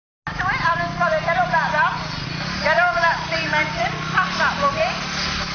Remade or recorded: recorded